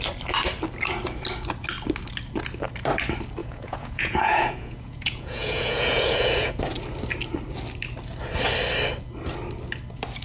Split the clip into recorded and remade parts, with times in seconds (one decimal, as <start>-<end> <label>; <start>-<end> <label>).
0.0-3.4 recorded; 3.4-6.6 remade; 6.6-10.2 recorded